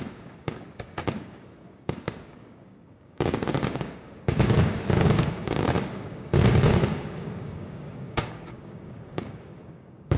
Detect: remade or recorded remade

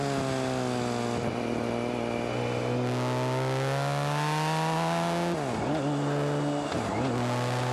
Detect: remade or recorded recorded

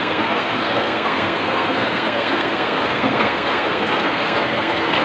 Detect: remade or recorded remade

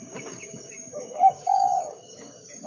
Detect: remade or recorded remade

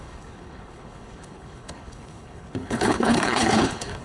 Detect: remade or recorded remade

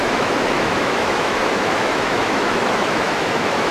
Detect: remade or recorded remade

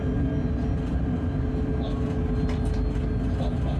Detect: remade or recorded recorded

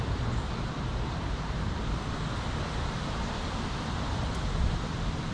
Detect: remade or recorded recorded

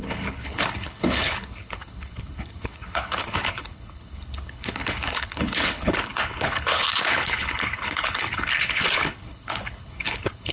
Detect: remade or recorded remade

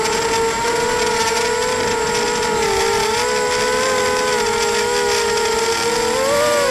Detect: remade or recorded recorded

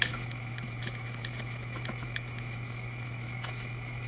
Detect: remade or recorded remade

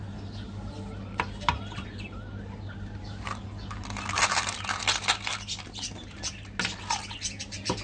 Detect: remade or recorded recorded